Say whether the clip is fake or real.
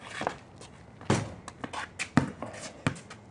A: real